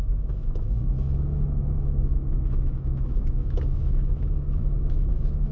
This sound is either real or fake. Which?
fake